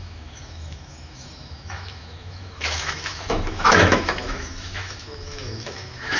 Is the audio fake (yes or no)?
yes